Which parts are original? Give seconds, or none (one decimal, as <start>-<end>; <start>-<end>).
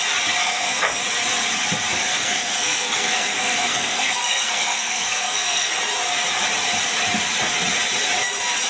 0.0-0.4; 1.0-2.1; 5.7-8.7